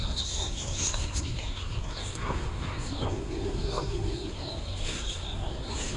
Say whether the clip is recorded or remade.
remade